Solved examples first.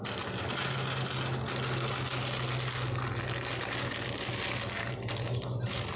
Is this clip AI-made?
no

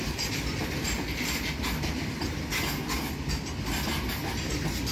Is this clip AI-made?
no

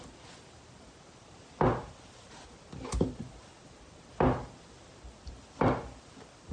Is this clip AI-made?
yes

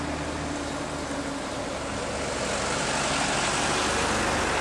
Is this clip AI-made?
no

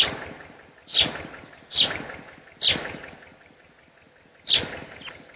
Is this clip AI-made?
no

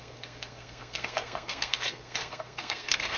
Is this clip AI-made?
yes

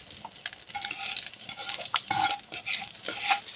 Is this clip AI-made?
no